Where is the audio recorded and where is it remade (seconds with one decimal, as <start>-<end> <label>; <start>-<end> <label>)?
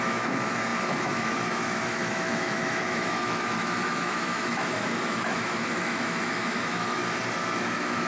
0.0-7.0 remade; 7.0-7.6 recorded; 7.6-8.1 remade